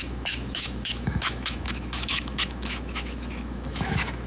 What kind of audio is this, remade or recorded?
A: remade